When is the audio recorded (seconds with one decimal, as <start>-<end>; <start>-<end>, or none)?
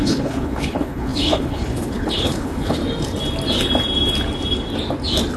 2.8-5.4